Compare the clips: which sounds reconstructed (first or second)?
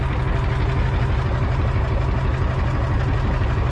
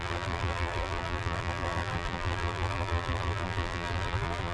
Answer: second